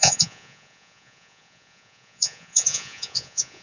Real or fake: fake